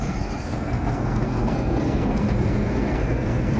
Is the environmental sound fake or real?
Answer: fake